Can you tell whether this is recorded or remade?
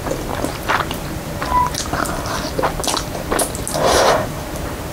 recorded